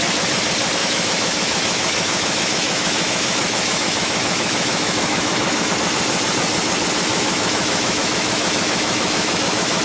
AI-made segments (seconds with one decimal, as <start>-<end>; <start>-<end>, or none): 0.8-5.7; 7.1-9.8